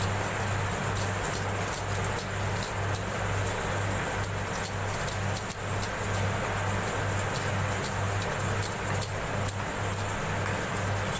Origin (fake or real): real